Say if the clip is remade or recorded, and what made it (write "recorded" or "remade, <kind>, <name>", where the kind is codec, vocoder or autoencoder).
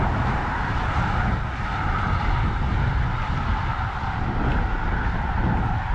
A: recorded